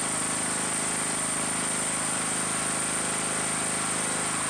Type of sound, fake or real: real